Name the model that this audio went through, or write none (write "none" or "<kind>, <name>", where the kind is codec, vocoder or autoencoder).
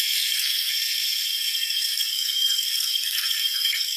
codec, SNAC